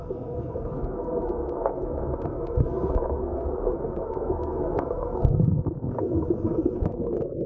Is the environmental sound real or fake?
fake